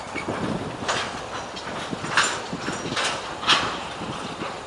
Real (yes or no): yes